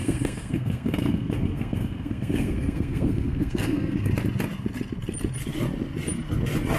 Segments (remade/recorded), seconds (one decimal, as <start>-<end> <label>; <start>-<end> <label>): 0.0-4.1 remade; 4.1-6.8 recorded